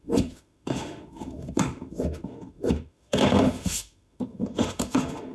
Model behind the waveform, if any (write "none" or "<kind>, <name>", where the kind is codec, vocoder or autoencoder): autoencoder, DAC-VAE